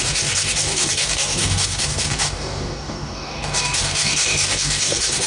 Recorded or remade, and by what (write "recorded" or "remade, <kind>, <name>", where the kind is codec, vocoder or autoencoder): remade, codec, DAC